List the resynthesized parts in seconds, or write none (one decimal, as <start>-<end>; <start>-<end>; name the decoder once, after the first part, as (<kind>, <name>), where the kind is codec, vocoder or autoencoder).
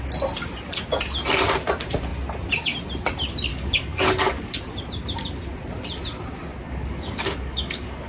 3.5-4.6 (codec, DAC); 6.6-8.1